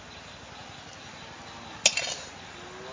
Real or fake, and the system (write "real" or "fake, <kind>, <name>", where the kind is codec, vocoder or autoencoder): real